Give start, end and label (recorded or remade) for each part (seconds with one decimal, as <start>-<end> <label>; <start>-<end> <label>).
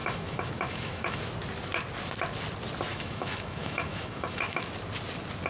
0.0-1.2 remade; 1.2-2.9 recorded; 2.9-4.7 remade; 4.7-5.5 recorded